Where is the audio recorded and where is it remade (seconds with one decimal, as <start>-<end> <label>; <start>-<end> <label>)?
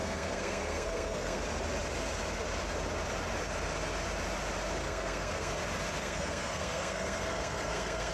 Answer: 0.0-1.4 remade; 1.4-4.8 recorded; 4.8-5.5 remade; 5.5-6.0 recorded; 6.0-8.1 remade